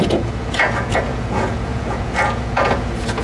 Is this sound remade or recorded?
remade